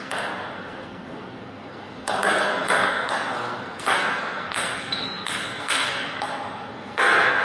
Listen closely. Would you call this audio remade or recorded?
remade